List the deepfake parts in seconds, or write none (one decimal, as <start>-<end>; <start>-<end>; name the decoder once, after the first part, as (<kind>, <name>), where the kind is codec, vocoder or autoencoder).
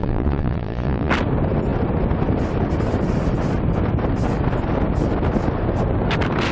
0.0-1.1 (vocoder, Vocos)